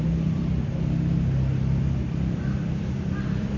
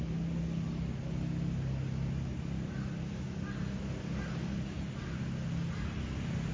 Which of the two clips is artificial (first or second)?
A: first